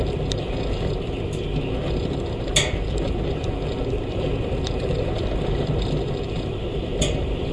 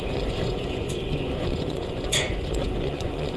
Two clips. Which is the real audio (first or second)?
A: first